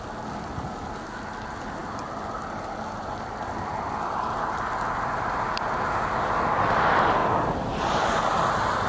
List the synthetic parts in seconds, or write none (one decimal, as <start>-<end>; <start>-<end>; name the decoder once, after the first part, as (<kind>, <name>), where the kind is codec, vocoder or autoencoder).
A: none